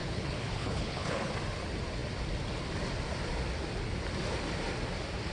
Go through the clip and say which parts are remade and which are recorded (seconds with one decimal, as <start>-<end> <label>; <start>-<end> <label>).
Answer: 0.0-1.3 remade; 1.3-5.3 recorded